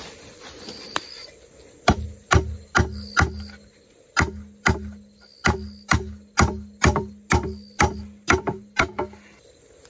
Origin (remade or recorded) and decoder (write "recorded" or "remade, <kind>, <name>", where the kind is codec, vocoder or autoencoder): recorded